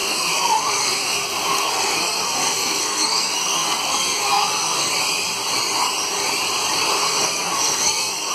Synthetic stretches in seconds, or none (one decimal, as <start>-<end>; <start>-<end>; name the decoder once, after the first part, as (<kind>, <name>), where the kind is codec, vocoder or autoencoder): 0.0-4.9 (codec, SNAC); 7.0-8.3